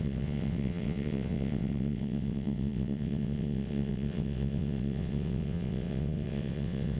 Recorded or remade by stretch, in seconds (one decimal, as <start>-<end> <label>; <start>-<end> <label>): 0.0-7.0 remade